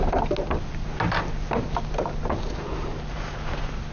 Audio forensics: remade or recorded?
recorded